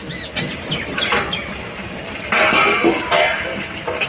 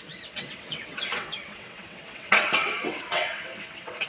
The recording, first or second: first